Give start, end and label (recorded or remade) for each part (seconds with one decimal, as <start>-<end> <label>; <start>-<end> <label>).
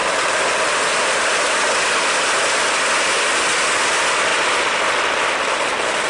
0.0-6.1 recorded